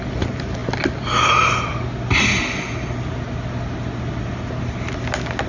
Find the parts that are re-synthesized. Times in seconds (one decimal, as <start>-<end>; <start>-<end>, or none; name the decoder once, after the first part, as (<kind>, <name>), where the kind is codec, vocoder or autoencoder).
none